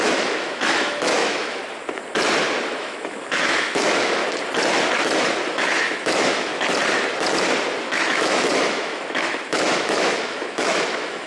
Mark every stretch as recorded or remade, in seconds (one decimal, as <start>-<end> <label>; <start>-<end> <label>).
0.0-1.6 remade; 1.6-2.8 recorded; 2.8-4.2 remade; 4.2-5.5 recorded; 5.5-6.5 remade; 6.5-7.8 recorded; 7.8-11.3 remade